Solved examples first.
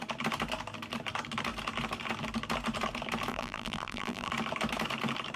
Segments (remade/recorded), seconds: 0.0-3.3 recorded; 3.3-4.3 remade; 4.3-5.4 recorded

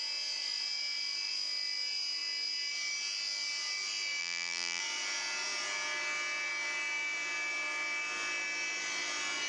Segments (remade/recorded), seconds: 0.0-4.2 recorded; 4.2-4.8 remade; 4.8-9.5 recorded

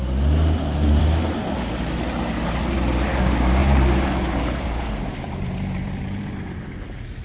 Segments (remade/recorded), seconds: 0.0-3.6 recorded; 3.6-6.3 remade; 6.3-7.2 recorded